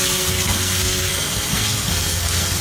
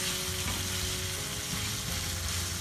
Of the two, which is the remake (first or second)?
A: first